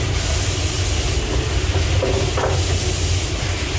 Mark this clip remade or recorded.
recorded